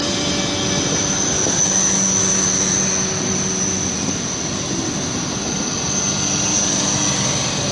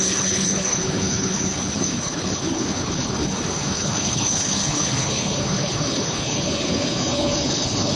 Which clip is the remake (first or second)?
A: second